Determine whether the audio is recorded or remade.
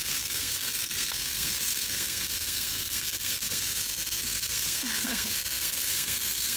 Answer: remade